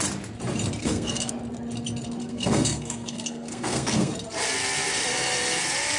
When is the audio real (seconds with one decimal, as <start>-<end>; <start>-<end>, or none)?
0.0-0.8; 1.3-2.2; 4.1-6.0